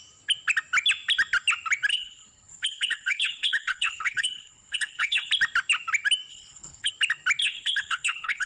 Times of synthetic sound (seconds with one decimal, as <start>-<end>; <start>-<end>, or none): 1.9-5.3; 6.3-6.9; 7.4-8.5